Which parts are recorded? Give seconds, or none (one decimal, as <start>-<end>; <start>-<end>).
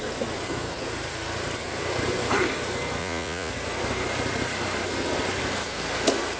0.0-3.0; 3.5-6.4